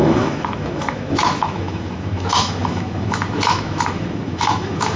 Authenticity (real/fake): fake